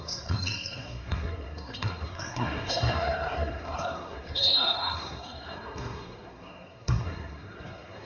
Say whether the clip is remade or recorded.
remade